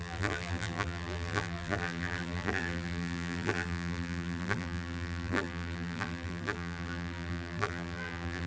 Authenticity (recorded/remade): remade